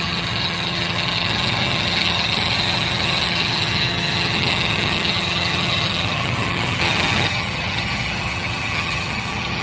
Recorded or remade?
remade